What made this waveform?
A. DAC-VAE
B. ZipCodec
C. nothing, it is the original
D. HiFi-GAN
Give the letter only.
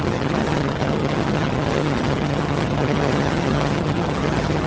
D